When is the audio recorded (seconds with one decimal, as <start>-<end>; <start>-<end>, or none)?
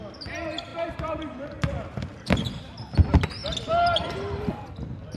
0.0-0.7; 2.6-5.2